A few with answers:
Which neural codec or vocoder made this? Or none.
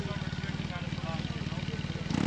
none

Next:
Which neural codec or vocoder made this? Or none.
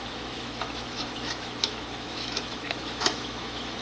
autoencoder, DAC-VAE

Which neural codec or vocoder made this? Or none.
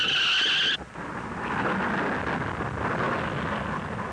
none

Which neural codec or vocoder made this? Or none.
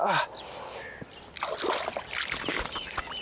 none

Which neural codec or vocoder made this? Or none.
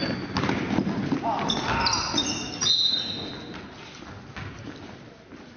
none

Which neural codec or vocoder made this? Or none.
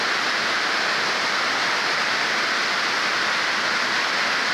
none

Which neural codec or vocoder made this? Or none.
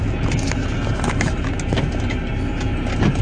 none